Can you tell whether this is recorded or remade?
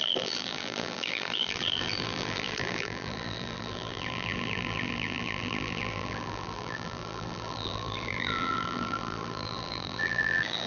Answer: remade